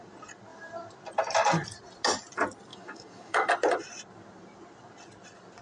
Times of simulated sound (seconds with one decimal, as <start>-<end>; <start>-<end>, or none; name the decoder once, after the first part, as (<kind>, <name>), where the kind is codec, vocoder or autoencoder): 2.7-3.5 (autoencoder, DAC-VAE)